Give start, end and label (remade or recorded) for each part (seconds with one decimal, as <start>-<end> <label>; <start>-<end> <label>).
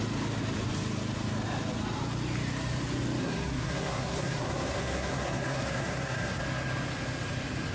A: 0.0-3.2 recorded; 3.2-6.4 remade; 6.4-7.7 recorded